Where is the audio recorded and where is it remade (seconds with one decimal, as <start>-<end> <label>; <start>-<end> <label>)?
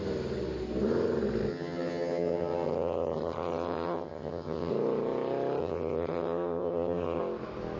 0.0-1.5 recorded; 1.5-4.7 remade; 4.7-5.6 recorded; 5.6-7.2 remade; 7.2-7.8 recorded